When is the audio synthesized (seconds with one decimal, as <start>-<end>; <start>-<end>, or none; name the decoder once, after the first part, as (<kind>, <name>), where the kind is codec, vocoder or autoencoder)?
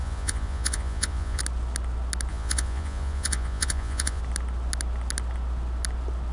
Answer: 0.0-1.4 (vocoder, Vocos); 2.3-4.2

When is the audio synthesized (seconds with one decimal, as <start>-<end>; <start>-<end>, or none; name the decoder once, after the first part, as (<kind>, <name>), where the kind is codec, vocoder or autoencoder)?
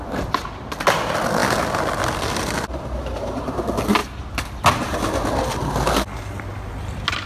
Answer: 2.7-3.6 (vocoder, BigVGAN v2)